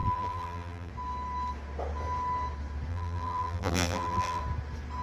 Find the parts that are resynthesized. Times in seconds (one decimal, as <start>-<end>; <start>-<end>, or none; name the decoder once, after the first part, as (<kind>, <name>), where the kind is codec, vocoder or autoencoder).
0.0-0.9 (vocoder, BigVGAN v2); 2.9-4.4